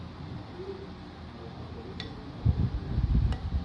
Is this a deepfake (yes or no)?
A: no